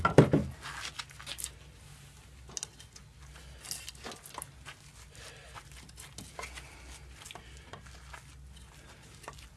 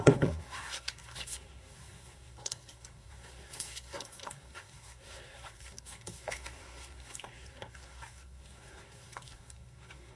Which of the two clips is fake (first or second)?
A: second